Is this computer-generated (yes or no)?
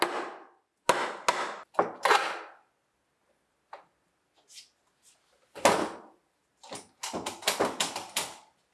no